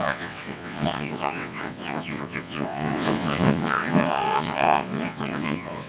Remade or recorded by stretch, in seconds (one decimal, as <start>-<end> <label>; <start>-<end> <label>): 0.0-5.9 remade